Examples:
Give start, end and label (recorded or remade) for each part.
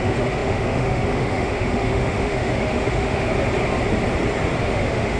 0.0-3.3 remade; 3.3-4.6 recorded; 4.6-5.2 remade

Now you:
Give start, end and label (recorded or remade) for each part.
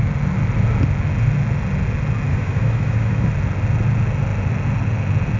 0.0-2.3 recorded; 2.3-3.3 remade; 3.3-5.4 recorded